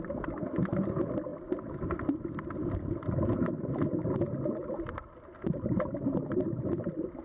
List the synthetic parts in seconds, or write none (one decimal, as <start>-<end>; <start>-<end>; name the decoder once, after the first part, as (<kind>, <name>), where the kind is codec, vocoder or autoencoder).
4.6-6.0 (vocoder, BigVGAN v2)